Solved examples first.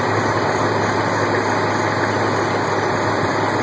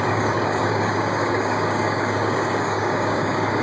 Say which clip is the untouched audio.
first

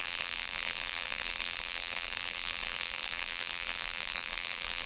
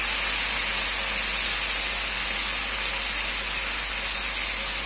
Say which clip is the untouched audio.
second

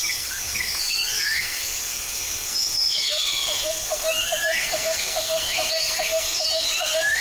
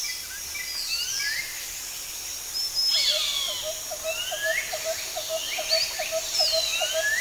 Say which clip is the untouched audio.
second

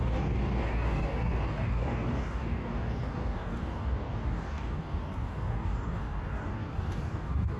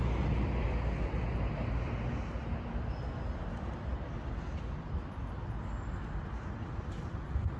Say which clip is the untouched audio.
second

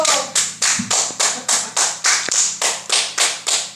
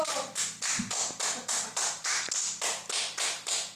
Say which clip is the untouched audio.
second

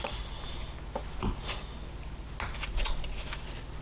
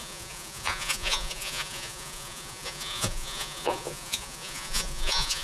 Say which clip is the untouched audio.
first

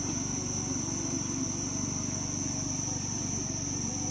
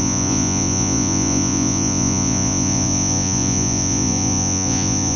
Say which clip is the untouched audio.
first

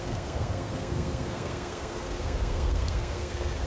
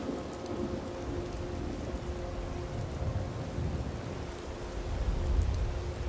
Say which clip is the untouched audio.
second